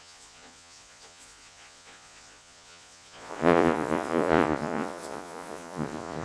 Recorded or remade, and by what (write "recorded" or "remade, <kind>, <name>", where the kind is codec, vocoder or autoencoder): remade, vocoder, Vocos